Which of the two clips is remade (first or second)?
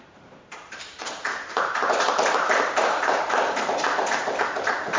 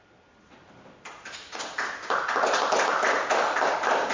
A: first